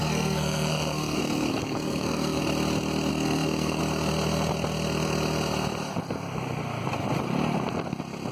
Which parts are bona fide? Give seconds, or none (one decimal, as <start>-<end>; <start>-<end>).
2.4-3.1; 3.8-8.3